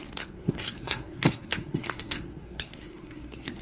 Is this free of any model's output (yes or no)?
no